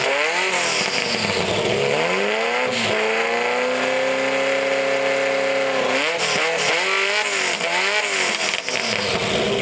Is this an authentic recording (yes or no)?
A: yes